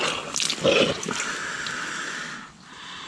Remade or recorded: recorded